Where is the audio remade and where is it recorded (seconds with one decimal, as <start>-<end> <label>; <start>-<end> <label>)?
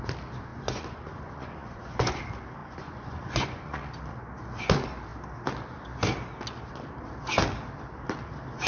0.0-0.5 recorded; 0.5-2.2 remade; 2.2-2.6 recorded; 2.6-3.9 remade; 3.9-8.7 recorded